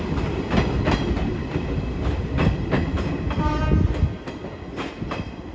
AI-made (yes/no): no